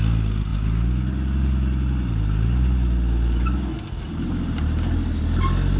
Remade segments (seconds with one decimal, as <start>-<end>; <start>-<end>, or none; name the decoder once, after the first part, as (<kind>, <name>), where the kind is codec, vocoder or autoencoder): none